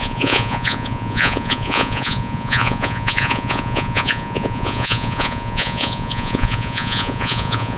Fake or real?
fake